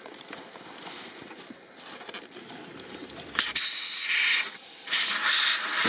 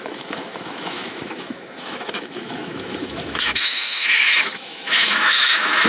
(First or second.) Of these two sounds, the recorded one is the first